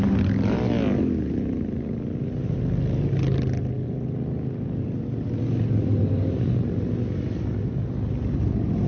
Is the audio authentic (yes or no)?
yes